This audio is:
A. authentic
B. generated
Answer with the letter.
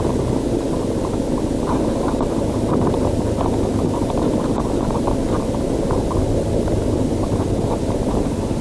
A